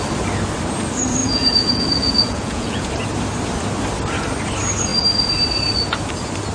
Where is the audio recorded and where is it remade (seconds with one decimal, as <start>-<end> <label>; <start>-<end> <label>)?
0.0-1.2 recorded; 1.2-2.9 remade; 2.9-6.5 recorded